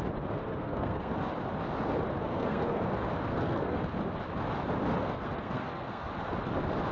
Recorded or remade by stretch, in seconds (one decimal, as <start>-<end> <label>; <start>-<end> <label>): 0.0-0.4 recorded; 0.4-1.1 remade; 1.1-2.2 recorded; 2.2-2.8 remade; 2.8-3.3 recorded; 3.3-3.8 remade; 3.8-5.0 recorded; 5.0-6.1 remade; 6.1-6.9 recorded